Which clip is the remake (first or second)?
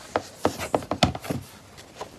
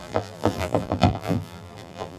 second